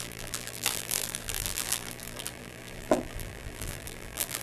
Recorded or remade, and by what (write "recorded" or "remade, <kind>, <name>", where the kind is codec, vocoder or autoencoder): remade, vocoder, BigVGAN v2